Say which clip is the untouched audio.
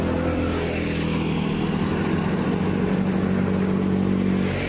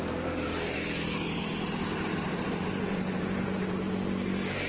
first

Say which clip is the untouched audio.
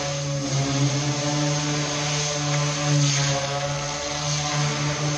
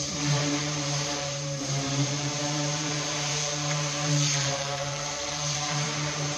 first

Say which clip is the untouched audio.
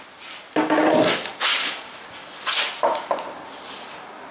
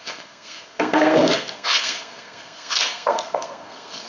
first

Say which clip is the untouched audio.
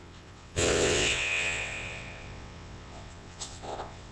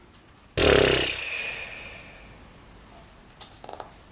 second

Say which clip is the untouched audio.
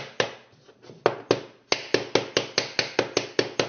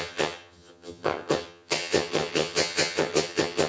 first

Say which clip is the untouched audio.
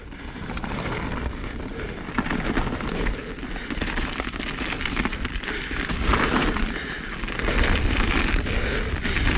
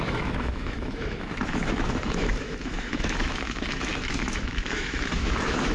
first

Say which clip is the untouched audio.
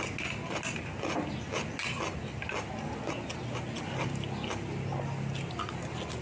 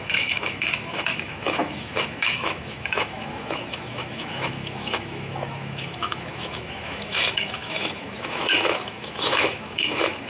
first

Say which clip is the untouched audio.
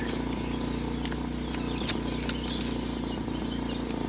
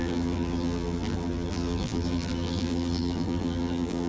first